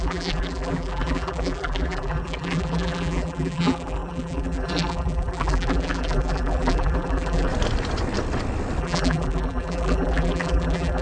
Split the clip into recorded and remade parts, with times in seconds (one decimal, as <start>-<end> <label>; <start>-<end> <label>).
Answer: 0.0-7.5 remade; 7.5-8.8 recorded; 8.8-11.0 remade